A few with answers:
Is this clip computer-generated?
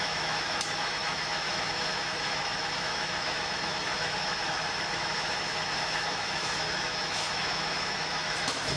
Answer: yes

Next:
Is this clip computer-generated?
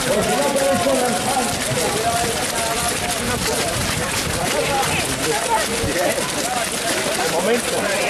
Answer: no